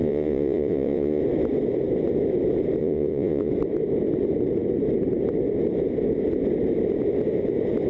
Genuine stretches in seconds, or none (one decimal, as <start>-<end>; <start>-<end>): 1.2-2.8; 3.5-7.9